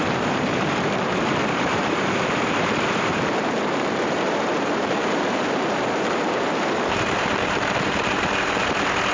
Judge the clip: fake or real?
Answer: fake